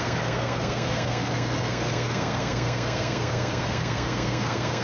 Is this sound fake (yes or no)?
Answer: yes